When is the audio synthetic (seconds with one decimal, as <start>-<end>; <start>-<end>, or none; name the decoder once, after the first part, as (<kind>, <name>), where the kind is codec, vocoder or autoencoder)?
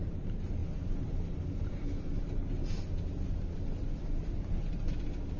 none